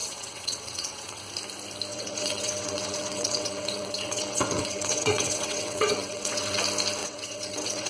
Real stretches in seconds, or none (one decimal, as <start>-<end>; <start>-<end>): 1.2-1.9; 6.6-7.0